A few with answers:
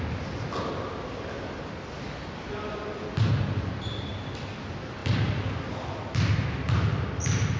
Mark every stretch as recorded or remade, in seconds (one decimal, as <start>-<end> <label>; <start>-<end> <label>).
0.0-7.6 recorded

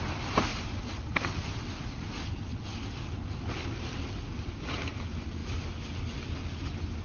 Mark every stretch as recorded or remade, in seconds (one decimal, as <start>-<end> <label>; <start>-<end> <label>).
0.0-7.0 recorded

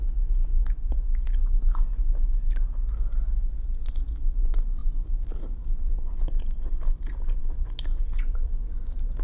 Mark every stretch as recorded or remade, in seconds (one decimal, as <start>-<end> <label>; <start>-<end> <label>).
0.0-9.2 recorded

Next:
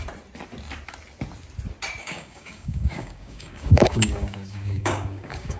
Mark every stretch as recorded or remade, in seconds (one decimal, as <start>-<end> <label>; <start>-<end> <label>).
0.0-2.0 recorded; 2.0-5.6 remade